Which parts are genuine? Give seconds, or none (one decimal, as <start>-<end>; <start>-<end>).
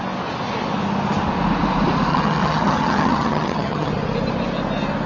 0.0-2.1; 3.9-5.1